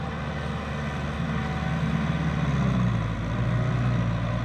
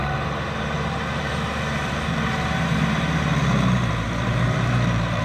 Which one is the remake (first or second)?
second